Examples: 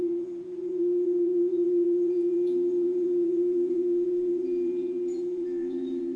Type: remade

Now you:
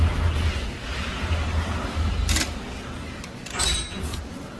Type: recorded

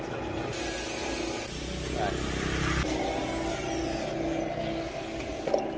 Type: recorded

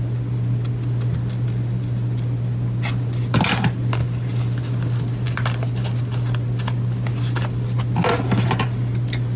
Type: recorded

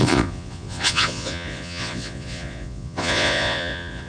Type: remade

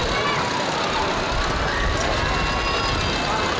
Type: recorded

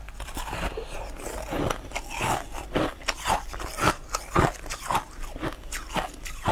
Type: recorded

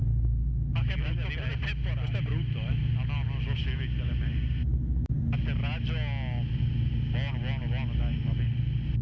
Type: recorded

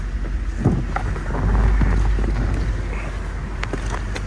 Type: recorded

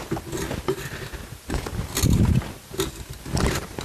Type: recorded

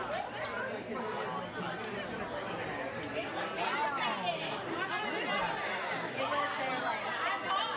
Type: recorded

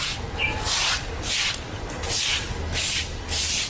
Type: recorded